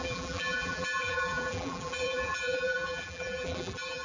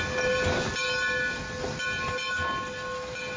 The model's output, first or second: first